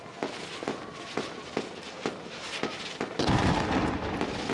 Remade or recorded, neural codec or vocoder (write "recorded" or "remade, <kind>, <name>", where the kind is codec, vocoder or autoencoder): recorded